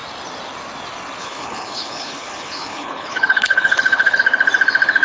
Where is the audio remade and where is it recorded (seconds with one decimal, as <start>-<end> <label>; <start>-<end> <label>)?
0.0-1.2 recorded; 1.2-4.2 remade; 4.2-5.0 recorded